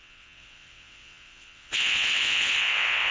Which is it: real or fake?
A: fake